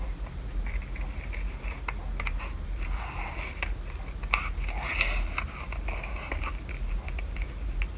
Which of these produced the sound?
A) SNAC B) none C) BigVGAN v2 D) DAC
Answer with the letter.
B